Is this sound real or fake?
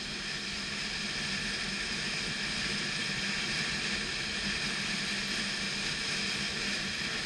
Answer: real